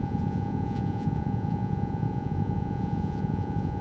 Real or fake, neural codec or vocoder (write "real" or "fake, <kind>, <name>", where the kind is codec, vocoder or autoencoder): fake, vocoder, Vocos